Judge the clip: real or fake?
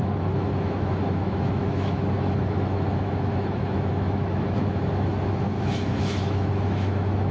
fake